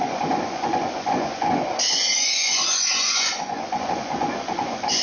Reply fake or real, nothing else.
fake